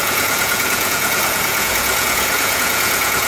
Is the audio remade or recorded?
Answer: remade